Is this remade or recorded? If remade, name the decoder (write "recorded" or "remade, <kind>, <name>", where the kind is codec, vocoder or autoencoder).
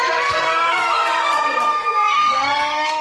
remade, codec, SNAC